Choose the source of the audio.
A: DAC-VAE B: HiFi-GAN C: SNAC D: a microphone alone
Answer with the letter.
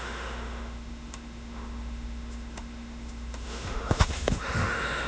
A